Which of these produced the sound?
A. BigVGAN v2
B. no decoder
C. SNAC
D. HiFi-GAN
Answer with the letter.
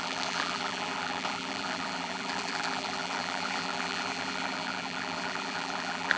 A